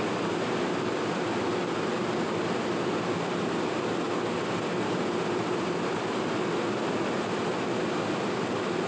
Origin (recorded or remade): recorded